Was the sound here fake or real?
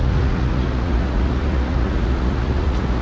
fake